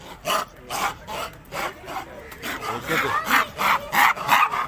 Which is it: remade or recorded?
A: recorded